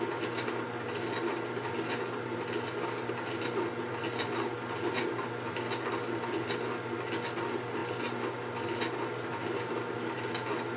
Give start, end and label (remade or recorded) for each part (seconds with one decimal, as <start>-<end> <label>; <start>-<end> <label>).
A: 0.0-10.8 recorded